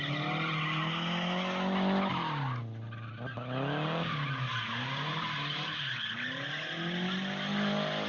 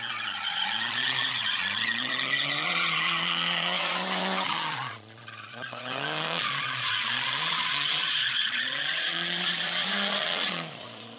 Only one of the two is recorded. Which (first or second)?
first